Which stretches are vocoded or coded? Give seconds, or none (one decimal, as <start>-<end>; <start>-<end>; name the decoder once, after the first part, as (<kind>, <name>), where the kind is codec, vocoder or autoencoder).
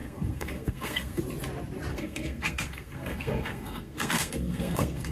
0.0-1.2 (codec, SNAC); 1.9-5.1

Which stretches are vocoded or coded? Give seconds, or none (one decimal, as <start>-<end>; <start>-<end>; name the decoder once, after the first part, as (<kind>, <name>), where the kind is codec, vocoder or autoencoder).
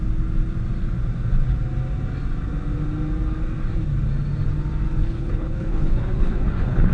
5.0-6.9 (codec, HILCodec)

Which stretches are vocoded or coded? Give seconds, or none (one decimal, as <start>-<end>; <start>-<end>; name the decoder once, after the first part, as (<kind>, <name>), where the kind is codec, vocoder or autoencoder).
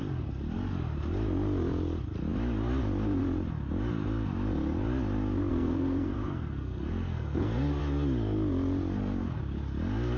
5.5-7.8 (codec, SNAC)